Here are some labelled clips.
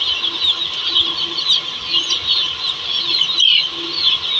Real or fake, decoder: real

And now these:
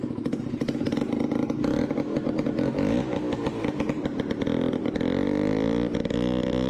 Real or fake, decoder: real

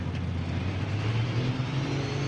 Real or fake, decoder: real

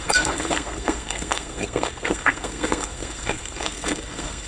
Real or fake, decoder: fake, codec, SNAC